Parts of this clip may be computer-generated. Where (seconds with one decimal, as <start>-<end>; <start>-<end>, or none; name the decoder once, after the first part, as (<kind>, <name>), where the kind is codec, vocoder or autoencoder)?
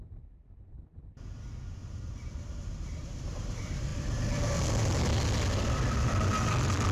0.0-3.9 (vocoder, BigVGAN v2); 5.6-6.9